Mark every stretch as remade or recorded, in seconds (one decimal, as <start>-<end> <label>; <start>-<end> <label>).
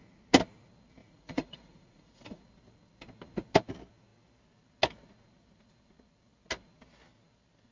0.0-1.0 recorded; 1.0-2.4 remade; 2.4-7.7 recorded